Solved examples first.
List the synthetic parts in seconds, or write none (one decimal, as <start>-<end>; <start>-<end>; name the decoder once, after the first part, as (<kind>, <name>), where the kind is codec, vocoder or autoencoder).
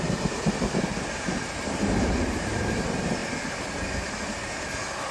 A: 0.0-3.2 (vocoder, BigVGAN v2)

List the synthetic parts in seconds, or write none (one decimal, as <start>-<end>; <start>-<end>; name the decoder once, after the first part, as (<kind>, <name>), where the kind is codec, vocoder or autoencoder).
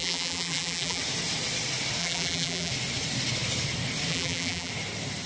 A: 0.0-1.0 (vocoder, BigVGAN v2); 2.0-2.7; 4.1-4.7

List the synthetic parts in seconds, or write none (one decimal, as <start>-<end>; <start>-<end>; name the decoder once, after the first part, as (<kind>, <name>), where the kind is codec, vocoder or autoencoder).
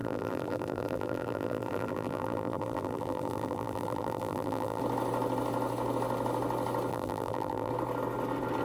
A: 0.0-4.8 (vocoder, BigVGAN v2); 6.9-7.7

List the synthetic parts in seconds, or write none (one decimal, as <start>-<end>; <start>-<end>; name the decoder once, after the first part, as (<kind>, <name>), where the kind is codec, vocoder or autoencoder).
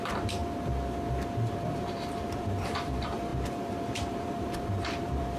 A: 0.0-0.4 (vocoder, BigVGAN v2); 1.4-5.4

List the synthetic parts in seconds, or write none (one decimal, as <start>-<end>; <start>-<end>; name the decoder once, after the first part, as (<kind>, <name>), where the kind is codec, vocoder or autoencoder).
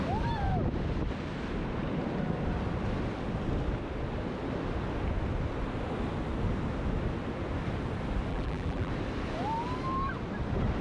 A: 8.3-8.9 (vocoder, BigVGAN v2)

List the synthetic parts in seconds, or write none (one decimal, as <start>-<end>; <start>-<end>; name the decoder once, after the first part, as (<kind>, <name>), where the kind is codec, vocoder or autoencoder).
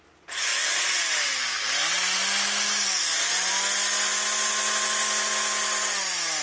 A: none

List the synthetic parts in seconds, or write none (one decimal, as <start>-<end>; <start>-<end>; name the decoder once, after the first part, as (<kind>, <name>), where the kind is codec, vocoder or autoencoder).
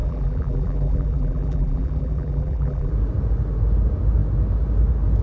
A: 0.0-2.9 (vocoder, BigVGAN v2)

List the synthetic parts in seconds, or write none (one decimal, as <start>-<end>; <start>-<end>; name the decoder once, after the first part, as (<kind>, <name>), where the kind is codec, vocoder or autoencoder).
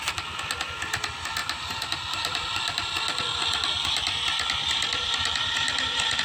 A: 1.4-2.9 (vocoder, BigVGAN v2); 3.3-6.2